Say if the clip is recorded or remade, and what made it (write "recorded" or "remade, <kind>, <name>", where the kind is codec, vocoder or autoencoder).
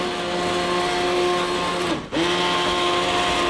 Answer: recorded